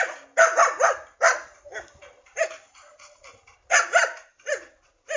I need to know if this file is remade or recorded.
recorded